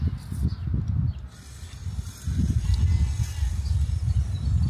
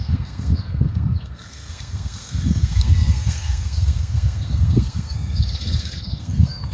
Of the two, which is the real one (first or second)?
first